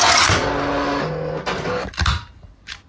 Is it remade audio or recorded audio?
recorded